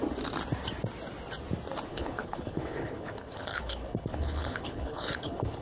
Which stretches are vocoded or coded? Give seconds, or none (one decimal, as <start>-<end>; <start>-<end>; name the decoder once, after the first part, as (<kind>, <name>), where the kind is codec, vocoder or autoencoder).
1.9-5.6 (codec, HILCodec)